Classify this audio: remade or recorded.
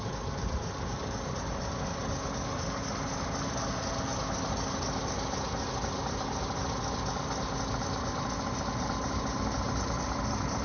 recorded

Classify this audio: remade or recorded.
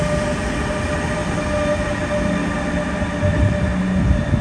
recorded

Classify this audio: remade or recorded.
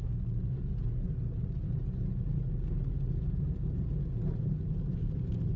recorded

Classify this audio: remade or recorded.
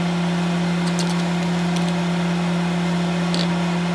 recorded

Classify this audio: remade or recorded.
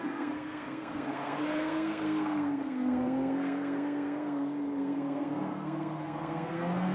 remade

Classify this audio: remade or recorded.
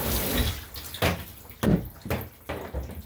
recorded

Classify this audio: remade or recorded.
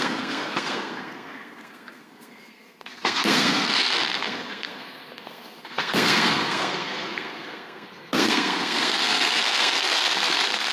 remade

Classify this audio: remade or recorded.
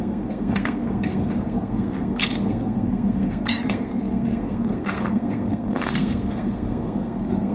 remade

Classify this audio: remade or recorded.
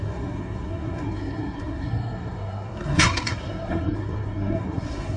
remade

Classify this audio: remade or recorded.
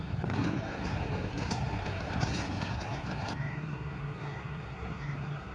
remade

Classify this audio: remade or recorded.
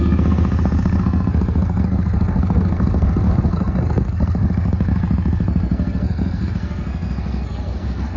remade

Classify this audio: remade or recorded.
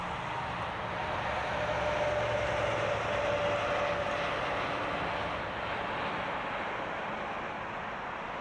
recorded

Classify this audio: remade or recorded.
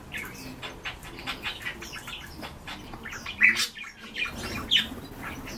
recorded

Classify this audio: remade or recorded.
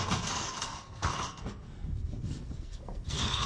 remade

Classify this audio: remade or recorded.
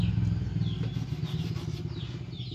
recorded